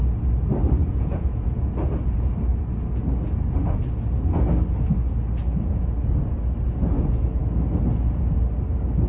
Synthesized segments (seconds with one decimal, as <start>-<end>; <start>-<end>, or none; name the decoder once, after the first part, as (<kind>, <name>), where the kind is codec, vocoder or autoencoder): 0.8-1.7 (vocoder, Vocos)